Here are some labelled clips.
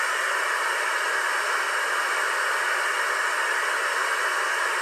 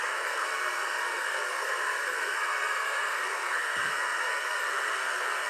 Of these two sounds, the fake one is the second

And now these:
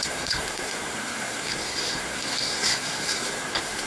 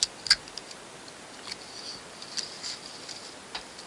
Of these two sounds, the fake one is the first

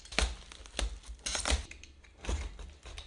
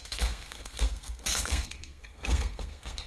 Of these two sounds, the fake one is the second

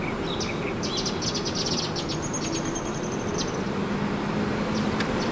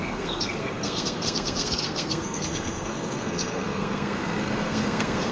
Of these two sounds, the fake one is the second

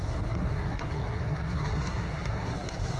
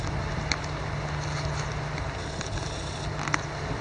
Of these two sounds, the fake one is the first